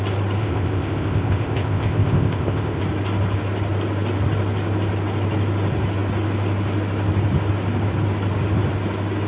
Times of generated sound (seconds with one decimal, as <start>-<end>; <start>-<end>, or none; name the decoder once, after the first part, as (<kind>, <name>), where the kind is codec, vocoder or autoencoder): 0.4-2.8 (codec, ZipCodec)